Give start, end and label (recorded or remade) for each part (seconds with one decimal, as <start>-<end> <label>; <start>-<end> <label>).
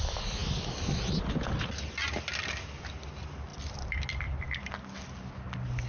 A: 0.0-5.9 recorded